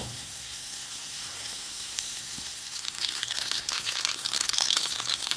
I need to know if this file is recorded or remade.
remade